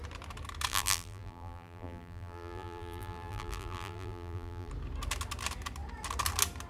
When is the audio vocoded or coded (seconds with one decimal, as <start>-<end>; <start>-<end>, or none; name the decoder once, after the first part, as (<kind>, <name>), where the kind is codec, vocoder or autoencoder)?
0.7-4.7 (vocoder, BigVGAN v2)